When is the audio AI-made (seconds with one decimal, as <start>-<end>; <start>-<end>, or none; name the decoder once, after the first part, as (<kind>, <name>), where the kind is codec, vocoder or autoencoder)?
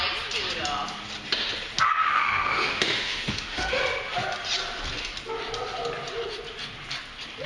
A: 2.0-3.8 (autoencoder, DAC-VAE)